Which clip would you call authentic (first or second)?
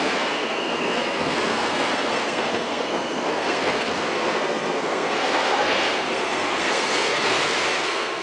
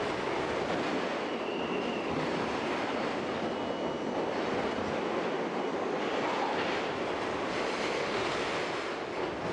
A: second